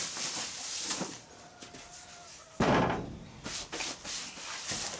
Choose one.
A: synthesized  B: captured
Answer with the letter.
B